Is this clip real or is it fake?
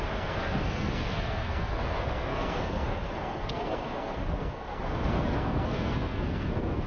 fake